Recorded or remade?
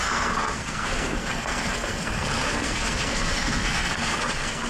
remade